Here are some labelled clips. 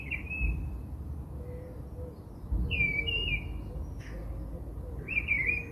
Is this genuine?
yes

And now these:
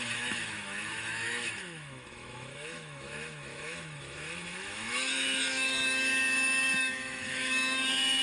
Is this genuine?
no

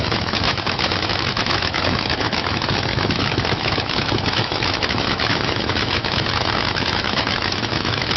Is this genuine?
no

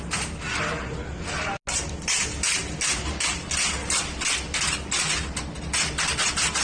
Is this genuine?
yes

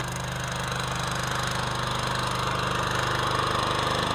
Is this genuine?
yes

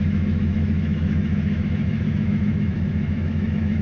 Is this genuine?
no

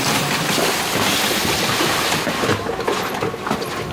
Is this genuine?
yes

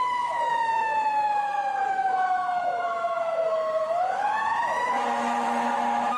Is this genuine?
no